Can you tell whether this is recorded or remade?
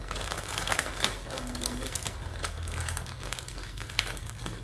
remade